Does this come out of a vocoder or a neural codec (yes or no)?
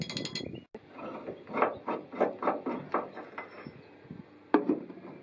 no